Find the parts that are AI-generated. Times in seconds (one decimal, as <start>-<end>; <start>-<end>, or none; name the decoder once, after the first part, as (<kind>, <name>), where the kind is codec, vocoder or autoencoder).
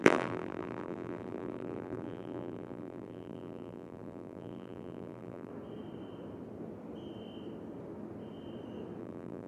0.0-5.5 (vocoder, BigVGAN v2); 9.0-9.5